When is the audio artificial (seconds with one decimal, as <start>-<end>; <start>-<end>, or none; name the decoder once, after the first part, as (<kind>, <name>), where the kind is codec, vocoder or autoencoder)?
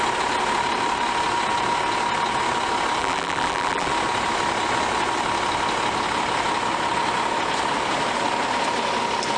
3.0-3.9 (vocoder, BigVGAN v2)